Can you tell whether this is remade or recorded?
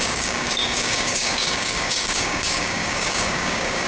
remade